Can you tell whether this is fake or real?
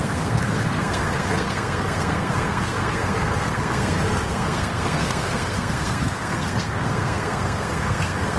fake